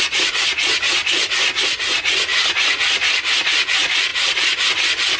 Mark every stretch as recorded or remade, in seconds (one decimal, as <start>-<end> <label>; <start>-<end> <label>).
0.0-5.2 recorded